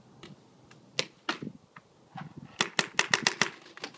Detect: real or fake real